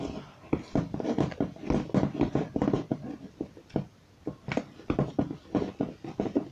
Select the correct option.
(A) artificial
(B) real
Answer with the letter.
B